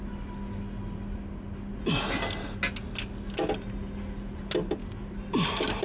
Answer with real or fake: real